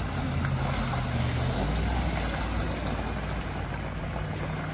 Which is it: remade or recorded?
recorded